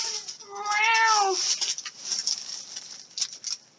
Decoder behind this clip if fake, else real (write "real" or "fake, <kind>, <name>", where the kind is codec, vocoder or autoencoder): real